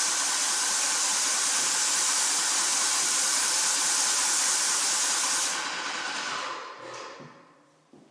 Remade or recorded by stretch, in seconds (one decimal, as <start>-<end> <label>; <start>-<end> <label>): 0.0-8.1 recorded